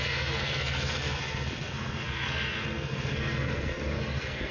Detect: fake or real fake